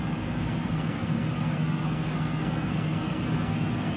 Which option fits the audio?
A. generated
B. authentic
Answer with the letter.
A